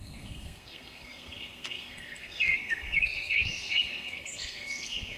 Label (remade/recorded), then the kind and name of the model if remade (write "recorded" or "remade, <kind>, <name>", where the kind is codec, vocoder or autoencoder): remade, codec, SNAC